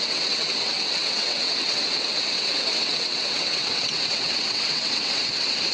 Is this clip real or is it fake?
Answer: fake